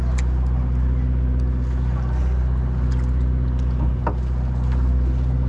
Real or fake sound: real